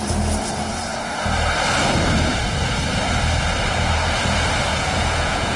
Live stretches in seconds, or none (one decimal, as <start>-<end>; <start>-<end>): 0.0-4.7